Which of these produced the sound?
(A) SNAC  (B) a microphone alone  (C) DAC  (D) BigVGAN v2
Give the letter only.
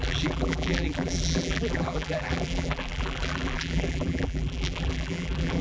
D